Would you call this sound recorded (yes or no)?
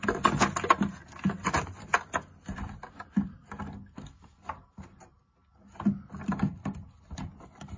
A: yes